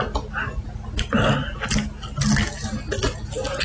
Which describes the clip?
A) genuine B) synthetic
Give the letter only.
A